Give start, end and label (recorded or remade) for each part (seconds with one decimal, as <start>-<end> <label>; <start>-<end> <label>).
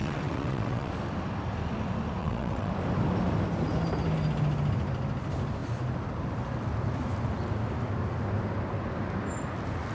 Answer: 0.0-0.9 remade; 0.9-2.2 recorded; 2.2-2.7 remade; 2.7-9.9 recorded